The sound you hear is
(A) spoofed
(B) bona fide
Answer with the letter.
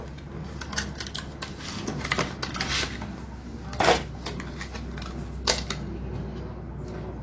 B